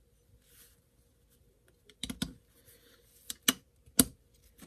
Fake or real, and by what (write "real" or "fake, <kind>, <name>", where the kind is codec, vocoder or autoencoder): real